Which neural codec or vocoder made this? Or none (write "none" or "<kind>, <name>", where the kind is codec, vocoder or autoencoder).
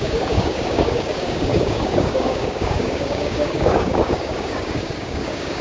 codec, DAC